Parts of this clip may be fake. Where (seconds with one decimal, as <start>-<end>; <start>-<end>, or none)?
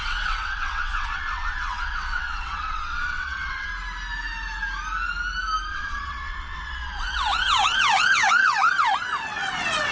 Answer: 0.0-3.7; 5.7-9.9